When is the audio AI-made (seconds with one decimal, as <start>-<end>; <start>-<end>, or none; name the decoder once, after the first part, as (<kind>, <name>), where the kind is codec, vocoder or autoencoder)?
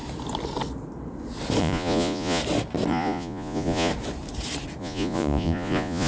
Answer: 1.6-2.4 (vocoder, Vocos); 2.9-3.9; 4.8-6.1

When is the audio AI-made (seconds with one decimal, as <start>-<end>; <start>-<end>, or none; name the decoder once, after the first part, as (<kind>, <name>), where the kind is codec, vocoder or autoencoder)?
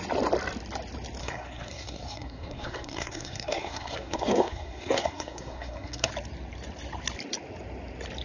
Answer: 1.2-6.1 (codec, SNAC)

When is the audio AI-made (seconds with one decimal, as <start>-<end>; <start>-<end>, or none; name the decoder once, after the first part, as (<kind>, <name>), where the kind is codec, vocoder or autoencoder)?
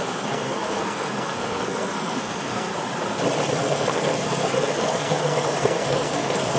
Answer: 0.0-2.7 (codec, SNAC); 3.6-6.6